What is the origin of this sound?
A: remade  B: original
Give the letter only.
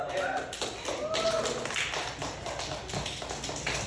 B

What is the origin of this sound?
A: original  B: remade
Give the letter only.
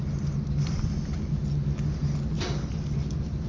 A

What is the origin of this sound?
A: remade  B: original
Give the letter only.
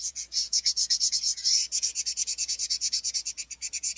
A